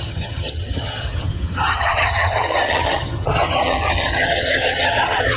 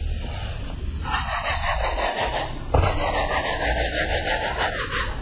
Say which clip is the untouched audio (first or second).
second